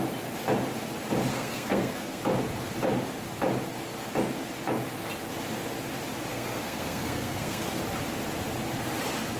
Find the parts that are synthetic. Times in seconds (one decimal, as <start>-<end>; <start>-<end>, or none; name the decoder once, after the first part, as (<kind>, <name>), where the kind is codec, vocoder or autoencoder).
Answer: 1.3-2.2 (codec, SNAC); 6.3-7.8